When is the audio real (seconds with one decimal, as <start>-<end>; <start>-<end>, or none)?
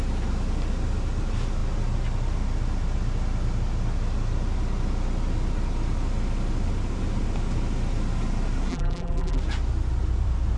0.0-8.7; 9.4-10.6